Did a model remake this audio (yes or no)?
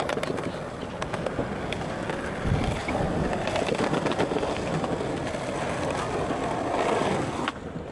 no